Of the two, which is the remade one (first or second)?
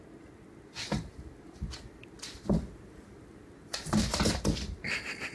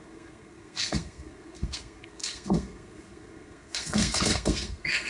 second